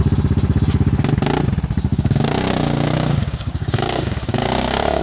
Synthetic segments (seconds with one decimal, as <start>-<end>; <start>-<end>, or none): 1.9-5.0